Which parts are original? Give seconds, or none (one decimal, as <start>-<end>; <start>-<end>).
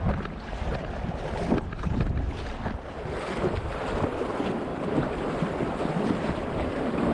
0.0-7.1